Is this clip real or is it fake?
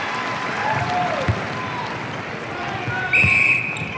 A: real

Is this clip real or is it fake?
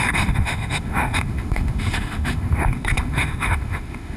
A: fake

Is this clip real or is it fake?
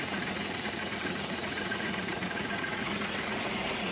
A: fake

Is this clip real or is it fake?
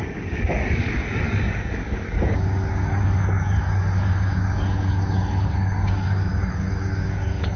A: fake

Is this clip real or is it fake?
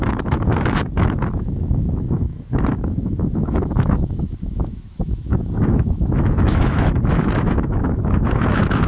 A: fake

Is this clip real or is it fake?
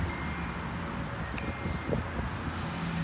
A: real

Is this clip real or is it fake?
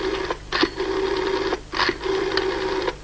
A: real